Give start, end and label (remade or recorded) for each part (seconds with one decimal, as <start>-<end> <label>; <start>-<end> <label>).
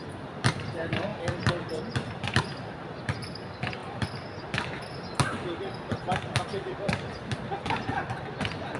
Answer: 0.0-8.8 recorded